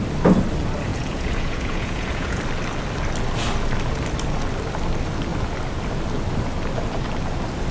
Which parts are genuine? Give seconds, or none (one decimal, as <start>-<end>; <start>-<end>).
0.0-0.9; 2.4-7.7